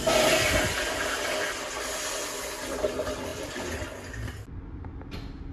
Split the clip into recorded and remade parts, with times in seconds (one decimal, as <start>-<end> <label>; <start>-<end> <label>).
0.0-5.5 recorded

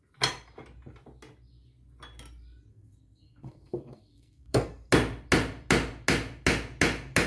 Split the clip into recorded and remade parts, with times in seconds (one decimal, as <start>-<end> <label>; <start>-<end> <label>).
0.0-2.7 recorded; 2.7-4.9 remade; 4.9-7.3 recorded

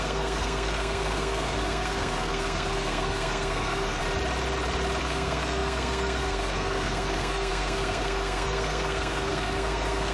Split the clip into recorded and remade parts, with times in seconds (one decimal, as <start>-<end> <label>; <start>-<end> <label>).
0.0-4.0 remade; 4.0-5.0 recorded; 5.0-10.1 remade

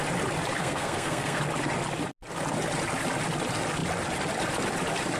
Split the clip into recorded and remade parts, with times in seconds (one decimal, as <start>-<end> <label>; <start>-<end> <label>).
0.0-0.6 recorded; 0.6-1.4 remade; 1.4-5.2 recorded

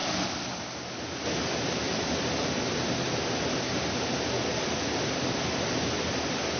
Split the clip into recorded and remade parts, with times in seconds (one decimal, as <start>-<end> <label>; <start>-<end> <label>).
0.0-2.5 remade; 2.5-6.6 recorded

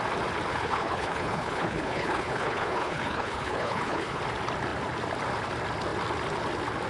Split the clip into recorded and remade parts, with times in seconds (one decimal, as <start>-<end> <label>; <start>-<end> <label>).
0.0-0.5 recorded; 0.5-4.2 remade; 4.2-6.9 recorded